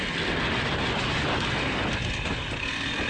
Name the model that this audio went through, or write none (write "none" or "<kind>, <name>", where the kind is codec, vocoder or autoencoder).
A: none